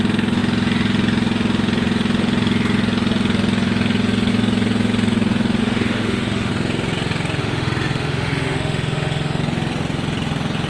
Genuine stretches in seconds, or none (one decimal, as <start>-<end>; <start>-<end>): 0.0-5.6; 6.5-7.4; 9.4-10.7